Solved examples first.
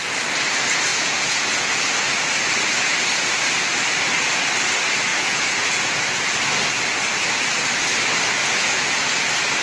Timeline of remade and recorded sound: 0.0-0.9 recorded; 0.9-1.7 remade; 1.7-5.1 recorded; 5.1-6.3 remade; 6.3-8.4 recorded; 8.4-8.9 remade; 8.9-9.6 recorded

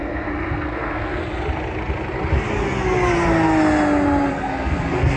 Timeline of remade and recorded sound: 0.0-1.2 remade; 1.2-4.3 recorded; 4.3-5.2 remade

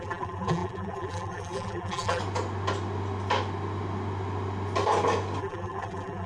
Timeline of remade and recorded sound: 0.0-2.2 remade; 2.2-5.4 recorded; 5.4-6.3 remade

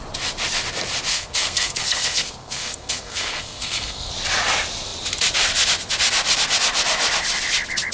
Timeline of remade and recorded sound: 0.0-1.1 recorded; 1.1-4.1 remade; 4.1-7.9 recorded